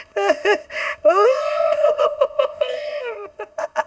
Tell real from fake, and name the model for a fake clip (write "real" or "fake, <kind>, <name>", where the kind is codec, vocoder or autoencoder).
fake, codec, ZipCodec